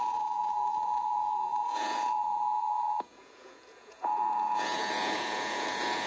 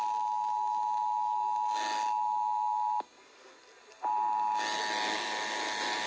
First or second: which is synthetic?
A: first